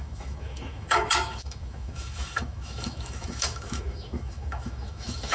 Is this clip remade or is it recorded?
remade